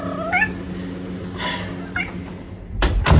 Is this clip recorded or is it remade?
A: recorded